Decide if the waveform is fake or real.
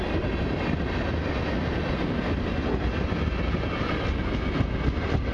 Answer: real